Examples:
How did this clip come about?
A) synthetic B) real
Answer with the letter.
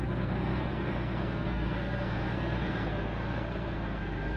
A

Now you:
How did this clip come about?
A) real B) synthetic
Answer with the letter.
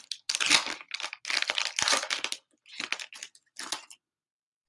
A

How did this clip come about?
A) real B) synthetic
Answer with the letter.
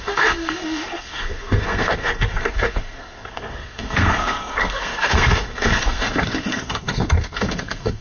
B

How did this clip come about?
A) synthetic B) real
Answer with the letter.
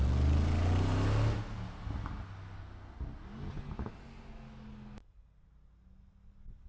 B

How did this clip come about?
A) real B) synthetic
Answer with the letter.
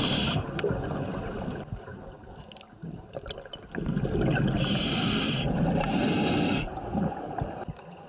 A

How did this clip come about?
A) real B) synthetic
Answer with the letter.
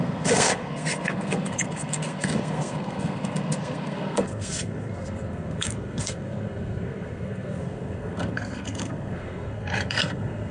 B